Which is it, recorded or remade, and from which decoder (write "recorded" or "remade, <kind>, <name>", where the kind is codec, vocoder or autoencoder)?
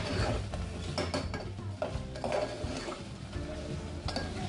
recorded